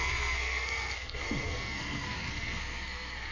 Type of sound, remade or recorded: remade